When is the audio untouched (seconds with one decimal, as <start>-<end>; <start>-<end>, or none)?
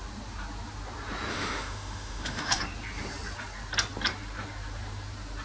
0.0-1.3; 2.6-5.4